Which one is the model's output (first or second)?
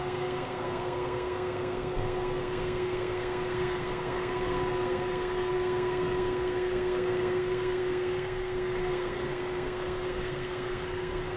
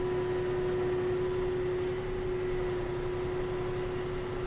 first